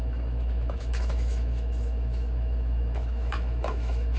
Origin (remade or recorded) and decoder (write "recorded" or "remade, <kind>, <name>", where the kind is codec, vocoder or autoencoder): remade, autoencoder, DAC-VAE